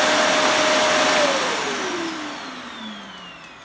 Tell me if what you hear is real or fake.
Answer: real